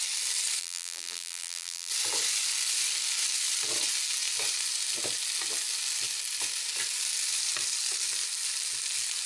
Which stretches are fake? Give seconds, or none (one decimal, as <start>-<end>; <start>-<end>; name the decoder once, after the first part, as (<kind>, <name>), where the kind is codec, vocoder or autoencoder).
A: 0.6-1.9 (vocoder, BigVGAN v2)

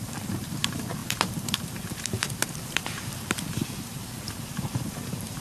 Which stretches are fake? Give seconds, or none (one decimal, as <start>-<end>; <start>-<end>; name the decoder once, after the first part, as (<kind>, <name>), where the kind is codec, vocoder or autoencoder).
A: 0.0-5.4 (vocoder, BigVGAN v2)

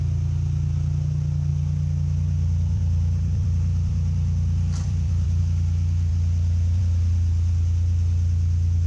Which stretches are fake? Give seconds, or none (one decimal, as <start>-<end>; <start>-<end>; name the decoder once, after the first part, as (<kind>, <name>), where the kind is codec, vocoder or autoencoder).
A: 1.5-5.4 (vocoder, BigVGAN v2); 6.1-6.8